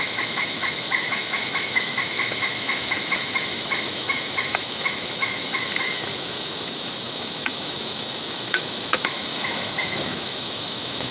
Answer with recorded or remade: remade